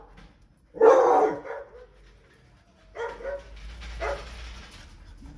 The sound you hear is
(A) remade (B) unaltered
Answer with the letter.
B